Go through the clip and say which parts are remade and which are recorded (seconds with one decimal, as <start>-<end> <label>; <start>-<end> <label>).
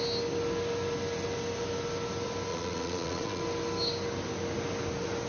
0.0-2.5 recorded; 2.5-3.4 remade; 3.4-5.3 recorded